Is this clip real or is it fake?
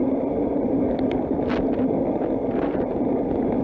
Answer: real